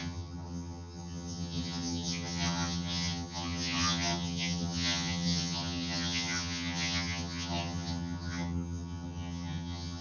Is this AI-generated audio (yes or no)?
yes